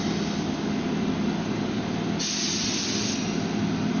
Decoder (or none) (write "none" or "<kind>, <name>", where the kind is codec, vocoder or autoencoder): none